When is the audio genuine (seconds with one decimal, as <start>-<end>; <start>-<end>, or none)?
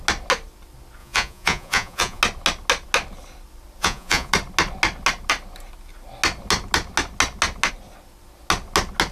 0.0-1.0; 2.2-3.8; 4.3-9.1